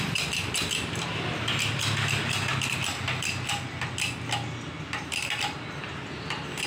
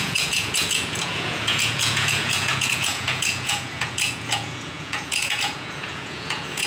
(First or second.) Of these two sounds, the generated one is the second